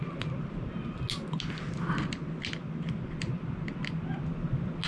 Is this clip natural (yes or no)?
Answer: yes